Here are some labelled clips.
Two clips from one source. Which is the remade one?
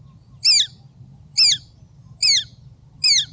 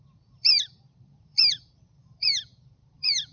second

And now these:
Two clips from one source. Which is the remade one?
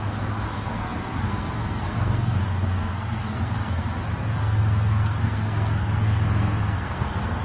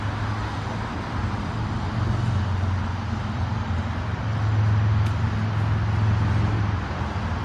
first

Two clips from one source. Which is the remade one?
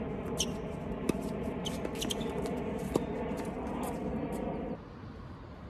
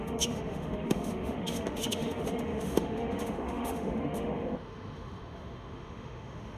second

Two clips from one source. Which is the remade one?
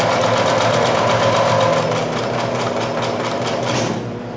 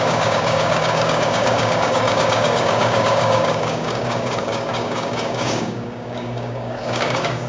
second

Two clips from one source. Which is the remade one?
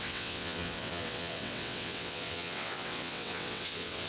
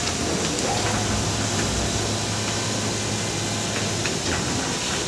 first